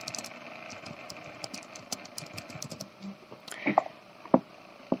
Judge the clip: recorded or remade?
recorded